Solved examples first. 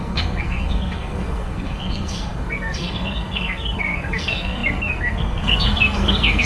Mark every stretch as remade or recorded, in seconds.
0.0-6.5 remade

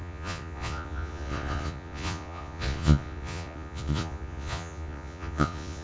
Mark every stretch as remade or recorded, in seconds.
0.0-5.8 remade

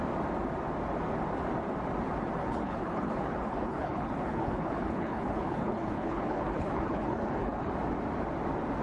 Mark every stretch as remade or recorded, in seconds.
0.0-2.4 recorded; 2.4-7.7 remade; 7.7-8.8 recorded

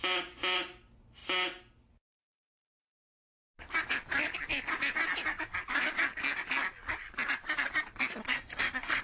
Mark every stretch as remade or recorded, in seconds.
0.0-8.2 recorded; 8.2-9.0 remade